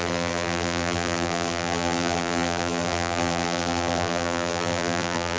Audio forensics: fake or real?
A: fake